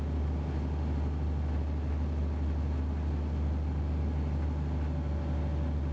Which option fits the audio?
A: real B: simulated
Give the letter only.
A